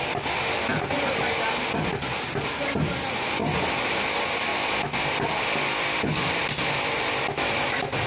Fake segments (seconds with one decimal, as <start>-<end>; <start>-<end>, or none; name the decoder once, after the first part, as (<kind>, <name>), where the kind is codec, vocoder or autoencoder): none